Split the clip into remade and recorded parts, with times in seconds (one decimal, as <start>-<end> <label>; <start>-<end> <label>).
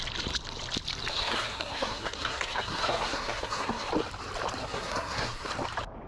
0.0-1.1 recorded; 1.1-3.9 remade; 3.9-4.6 recorded; 4.6-5.5 remade; 5.5-6.1 recorded